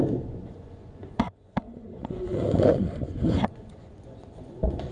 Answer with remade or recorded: remade